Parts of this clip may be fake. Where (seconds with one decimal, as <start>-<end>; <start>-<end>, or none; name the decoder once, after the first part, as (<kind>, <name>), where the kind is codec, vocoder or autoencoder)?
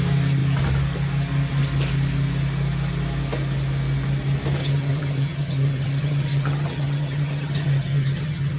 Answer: 4.6-8.6 (vocoder, HiFi-GAN)